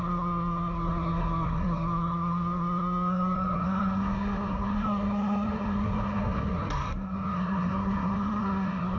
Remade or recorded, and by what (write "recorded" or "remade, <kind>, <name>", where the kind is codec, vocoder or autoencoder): remade, codec, SNAC